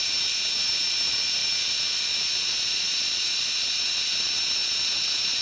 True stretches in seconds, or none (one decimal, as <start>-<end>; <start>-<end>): 0.0-5.4